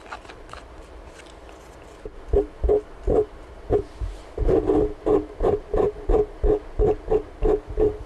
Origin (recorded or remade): recorded